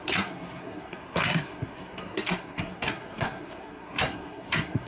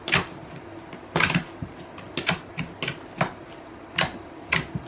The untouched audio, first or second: second